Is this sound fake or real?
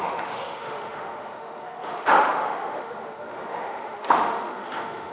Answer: fake